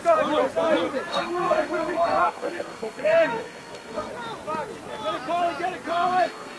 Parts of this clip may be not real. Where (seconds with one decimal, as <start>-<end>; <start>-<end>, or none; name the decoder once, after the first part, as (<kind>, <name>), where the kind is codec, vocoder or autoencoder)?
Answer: 1.1-4.1 (codec, SNAC); 5.9-6.6